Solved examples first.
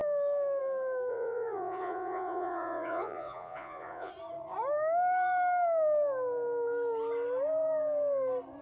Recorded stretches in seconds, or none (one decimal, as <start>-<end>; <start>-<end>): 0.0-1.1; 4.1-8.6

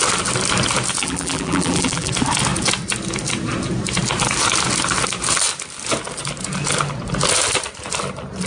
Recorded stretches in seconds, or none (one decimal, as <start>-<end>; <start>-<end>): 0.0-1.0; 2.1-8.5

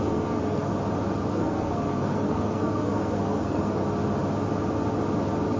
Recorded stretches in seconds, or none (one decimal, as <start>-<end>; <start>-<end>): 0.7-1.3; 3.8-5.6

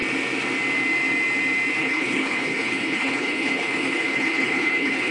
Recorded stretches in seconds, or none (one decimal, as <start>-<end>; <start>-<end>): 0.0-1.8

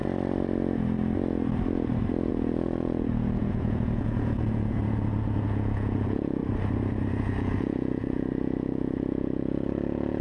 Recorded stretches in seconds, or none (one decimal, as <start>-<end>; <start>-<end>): 0.0-2.3; 6.4-7.1